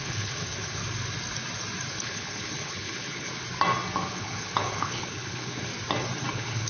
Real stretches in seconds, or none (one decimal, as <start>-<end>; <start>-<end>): 0.8-1.9; 3.3-4.1; 5.7-6.3